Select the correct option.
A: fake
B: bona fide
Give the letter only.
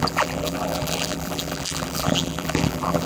A